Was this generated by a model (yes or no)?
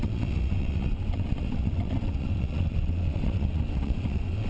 yes